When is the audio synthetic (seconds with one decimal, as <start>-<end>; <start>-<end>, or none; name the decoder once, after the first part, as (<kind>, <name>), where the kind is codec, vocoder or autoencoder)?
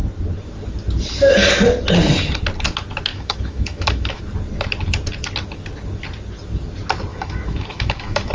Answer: 3.1-4.2 (autoencoder, DAC-VAE); 7.1-8.3